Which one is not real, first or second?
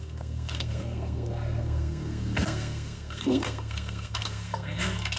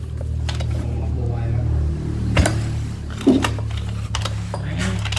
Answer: first